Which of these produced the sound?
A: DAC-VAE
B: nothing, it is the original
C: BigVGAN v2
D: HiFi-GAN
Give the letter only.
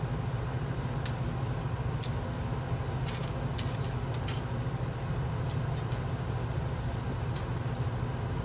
B